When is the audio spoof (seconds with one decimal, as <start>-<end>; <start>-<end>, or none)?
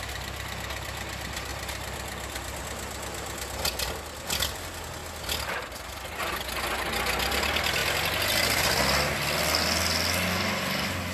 none